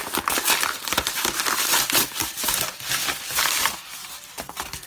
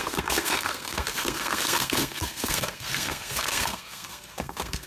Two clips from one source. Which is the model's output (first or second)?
second